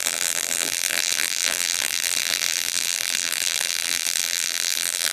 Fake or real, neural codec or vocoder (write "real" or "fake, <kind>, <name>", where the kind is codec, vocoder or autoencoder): fake, vocoder, BigVGAN v2